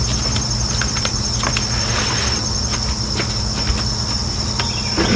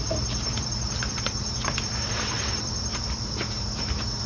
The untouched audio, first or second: first